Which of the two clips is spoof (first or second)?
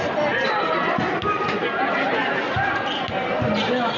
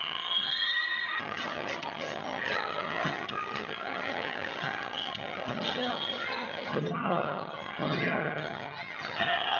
second